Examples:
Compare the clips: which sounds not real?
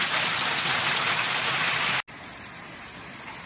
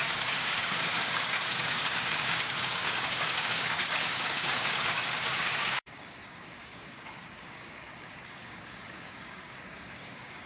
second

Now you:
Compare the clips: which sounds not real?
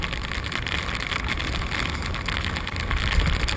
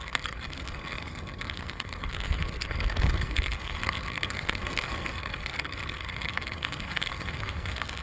second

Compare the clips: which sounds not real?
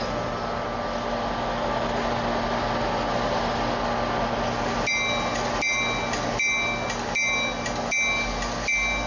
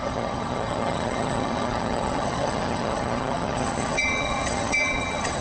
second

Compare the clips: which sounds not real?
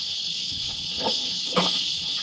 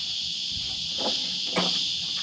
first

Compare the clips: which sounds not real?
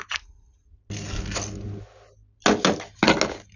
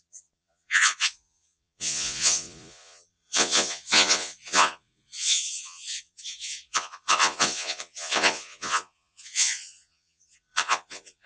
second